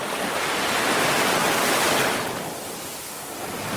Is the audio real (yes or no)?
yes